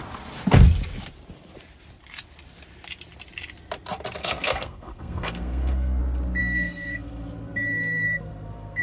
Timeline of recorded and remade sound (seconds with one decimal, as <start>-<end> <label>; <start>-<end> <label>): 0.0-4.2 recorded; 4.2-6.0 remade; 6.0-6.4 recorded; 6.4-8.8 remade